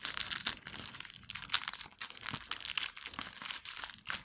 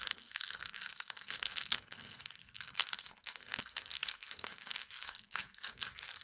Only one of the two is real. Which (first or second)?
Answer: first